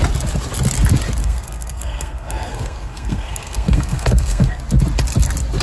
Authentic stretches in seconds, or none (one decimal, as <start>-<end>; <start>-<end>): 0.0-1.2; 4.6-5.6